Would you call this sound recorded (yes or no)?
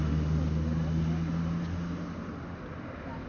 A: yes